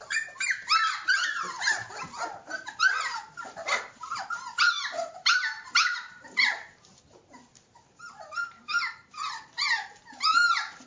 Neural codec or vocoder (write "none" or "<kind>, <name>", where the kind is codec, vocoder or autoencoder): vocoder, BigVGAN v2